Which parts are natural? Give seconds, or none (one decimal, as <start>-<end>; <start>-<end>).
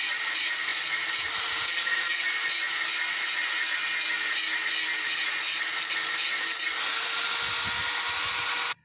0.0-8.8